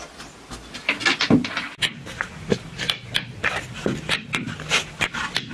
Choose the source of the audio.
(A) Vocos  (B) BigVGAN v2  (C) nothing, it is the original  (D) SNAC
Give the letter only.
C